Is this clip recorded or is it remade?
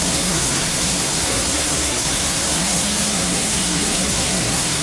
remade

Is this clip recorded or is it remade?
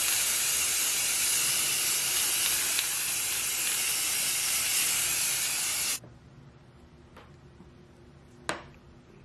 recorded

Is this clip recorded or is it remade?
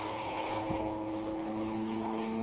remade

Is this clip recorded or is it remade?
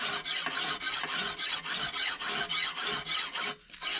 recorded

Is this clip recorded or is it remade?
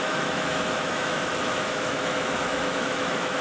remade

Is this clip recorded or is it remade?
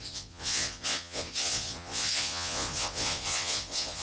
remade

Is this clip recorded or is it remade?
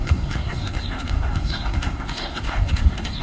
remade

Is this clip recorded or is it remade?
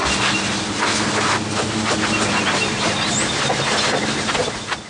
recorded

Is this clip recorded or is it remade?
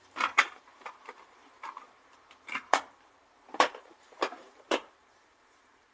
remade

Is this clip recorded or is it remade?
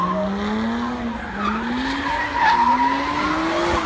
recorded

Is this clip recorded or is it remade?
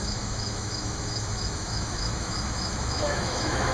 remade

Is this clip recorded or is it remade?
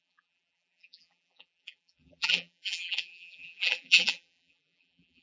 remade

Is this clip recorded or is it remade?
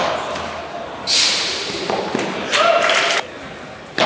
recorded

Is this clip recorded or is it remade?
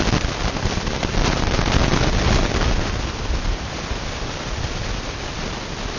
recorded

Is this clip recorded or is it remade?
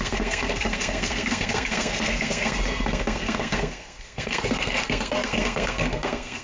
remade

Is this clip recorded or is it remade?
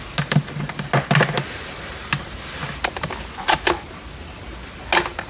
recorded